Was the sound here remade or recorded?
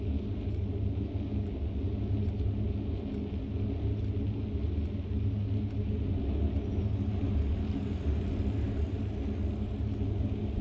recorded